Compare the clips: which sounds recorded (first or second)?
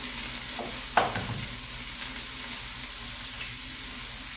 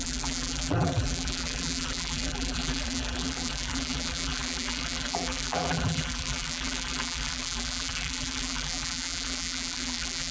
first